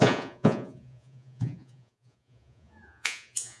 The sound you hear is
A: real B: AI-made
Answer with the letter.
B